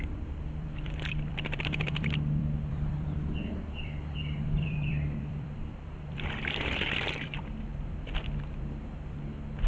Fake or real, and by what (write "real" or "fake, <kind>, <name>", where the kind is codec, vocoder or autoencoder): fake, vocoder, BigVGAN v2